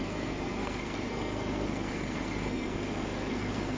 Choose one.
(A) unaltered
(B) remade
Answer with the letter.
B